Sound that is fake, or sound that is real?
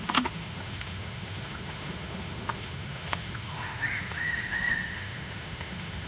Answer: fake